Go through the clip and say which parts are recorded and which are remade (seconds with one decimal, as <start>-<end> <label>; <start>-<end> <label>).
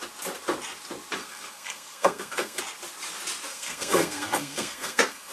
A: 0.0-1.2 recorded; 1.2-2.6 remade; 2.6-3.5 recorded; 3.5-5.3 remade